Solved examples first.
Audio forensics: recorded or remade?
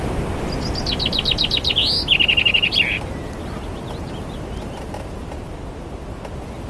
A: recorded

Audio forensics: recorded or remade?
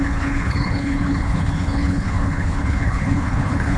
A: remade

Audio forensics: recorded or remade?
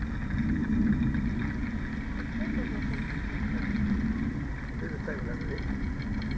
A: recorded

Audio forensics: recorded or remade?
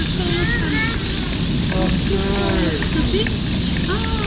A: recorded